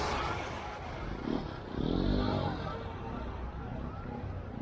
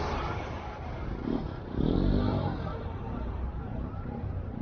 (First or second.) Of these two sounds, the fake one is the second